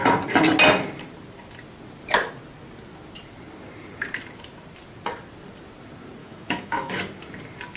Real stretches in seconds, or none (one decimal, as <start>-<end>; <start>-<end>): 0.0-6.2; 7.0-7.8